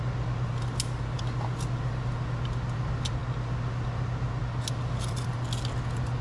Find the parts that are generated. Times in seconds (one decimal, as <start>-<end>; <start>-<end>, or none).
none